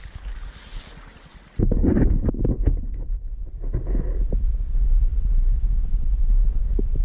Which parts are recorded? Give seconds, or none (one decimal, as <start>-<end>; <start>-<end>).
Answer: 1.1-7.0

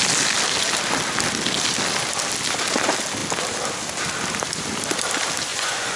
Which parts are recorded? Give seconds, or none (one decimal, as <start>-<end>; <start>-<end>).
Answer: 0.0-5.5

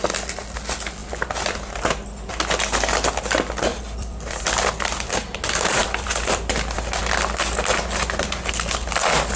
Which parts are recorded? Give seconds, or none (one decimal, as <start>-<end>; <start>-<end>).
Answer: 0.0-3.7; 4.4-5.8; 7.0-9.4

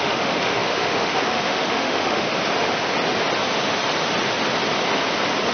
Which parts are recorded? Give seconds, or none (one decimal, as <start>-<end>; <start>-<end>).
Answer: 2.3-5.5